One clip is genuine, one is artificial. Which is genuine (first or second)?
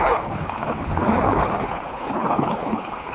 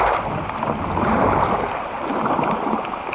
second